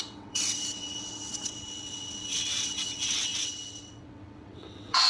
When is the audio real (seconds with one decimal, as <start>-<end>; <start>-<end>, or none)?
none